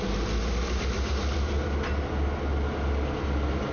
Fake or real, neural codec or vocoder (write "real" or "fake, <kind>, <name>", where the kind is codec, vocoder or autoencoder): real